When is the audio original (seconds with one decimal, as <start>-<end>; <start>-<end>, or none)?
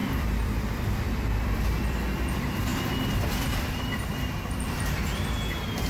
none